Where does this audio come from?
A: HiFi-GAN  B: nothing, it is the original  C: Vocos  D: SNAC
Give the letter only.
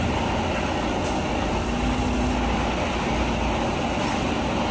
B